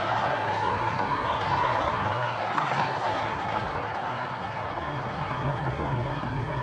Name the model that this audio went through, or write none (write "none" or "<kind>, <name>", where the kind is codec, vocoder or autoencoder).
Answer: codec, SNAC